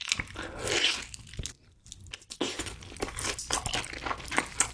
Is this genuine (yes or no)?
yes